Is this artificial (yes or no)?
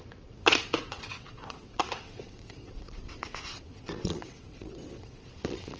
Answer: yes